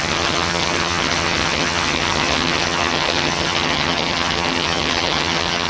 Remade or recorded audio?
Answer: remade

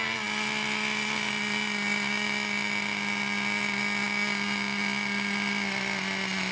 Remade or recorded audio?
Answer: recorded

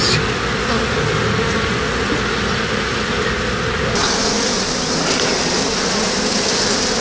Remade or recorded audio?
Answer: recorded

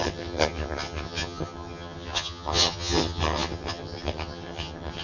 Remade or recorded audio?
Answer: remade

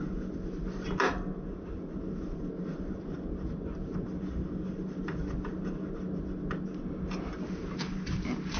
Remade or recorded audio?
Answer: recorded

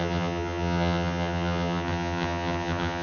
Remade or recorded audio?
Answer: remade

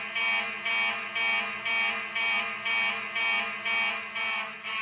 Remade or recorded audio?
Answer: recorded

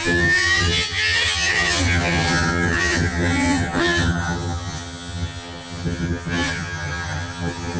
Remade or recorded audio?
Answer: remade